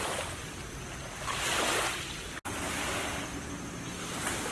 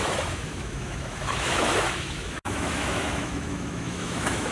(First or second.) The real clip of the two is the first